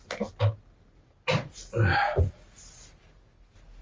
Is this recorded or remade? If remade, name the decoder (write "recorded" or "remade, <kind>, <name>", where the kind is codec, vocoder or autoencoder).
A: recorded